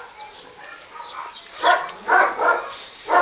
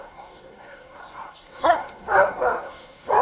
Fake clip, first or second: second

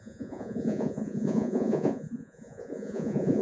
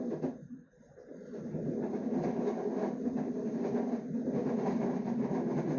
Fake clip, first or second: first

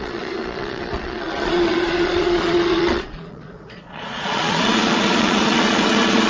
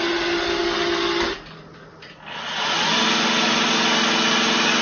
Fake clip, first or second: first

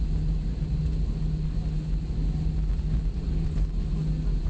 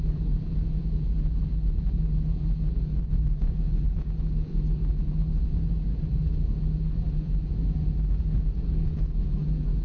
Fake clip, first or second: second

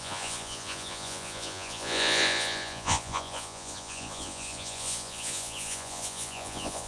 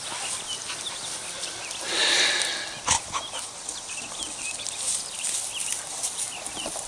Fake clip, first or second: first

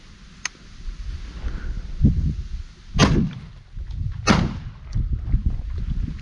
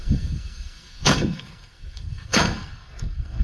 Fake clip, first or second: second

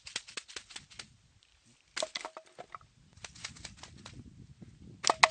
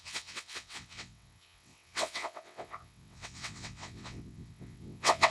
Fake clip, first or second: second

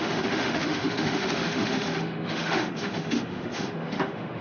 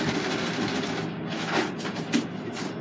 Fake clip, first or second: first